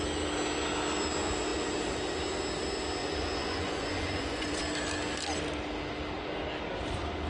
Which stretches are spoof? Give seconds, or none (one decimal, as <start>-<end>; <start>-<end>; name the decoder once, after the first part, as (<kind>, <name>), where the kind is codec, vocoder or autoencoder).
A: 3.0-4.6 (vocoder, Vocos)